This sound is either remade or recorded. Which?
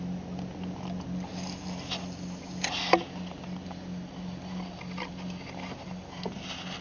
recorded